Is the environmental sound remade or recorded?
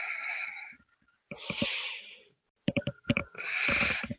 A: remade